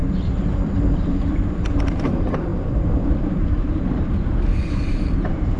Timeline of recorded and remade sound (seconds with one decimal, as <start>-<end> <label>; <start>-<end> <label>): 0.0-1.0 recorded; 1.0-5.6 remade